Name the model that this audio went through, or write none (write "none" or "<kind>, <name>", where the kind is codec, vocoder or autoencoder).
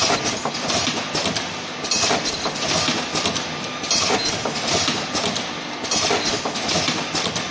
none